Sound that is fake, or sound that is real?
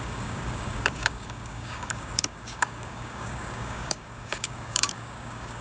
fake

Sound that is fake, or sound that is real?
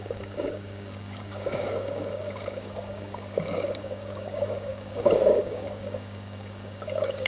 fake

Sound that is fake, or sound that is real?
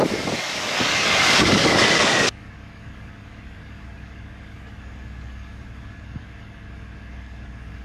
fake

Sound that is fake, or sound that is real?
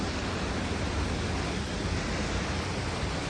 real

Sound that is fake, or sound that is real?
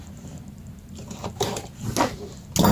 real